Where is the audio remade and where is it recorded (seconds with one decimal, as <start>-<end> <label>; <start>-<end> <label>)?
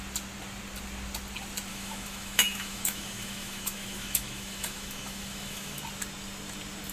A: 0.0-1.7 recorded; 1.7-5.8 remade; 5.8-6.9 recorded